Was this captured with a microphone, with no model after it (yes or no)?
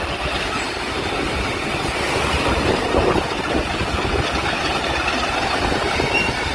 no